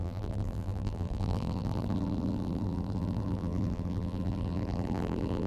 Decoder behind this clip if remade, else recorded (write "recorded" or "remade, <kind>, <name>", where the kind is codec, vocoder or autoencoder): remade, vocoder, BigVGAN v2